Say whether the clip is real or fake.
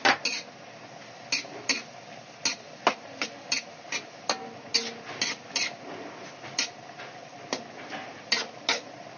real